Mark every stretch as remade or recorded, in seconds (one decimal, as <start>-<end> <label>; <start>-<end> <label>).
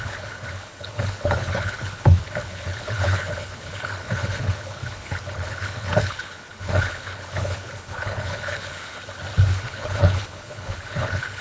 0.0-9.0 remade; 9.0-9.6 recorded; 9.6-11.4 remade